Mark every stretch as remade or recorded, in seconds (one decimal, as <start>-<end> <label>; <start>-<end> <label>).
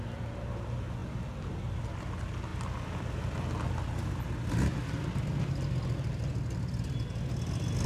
0.0-7.9 recorded